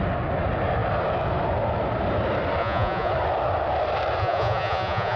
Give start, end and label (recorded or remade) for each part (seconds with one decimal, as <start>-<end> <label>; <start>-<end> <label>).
0.0-2.6 recorded; 2.6-3.1 remade; 3.1-4.2 recorded; 4.2-5.2 remade